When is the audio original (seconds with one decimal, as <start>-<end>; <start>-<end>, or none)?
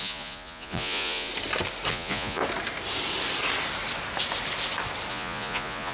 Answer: 1.3-1.9; 2.4-5.1